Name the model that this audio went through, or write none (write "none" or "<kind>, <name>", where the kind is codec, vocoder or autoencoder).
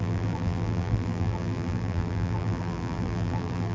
vocoder, BigVGAN v2